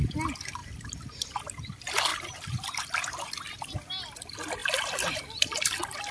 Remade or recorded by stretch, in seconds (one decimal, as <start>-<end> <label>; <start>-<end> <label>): 0.0-6.1 recorded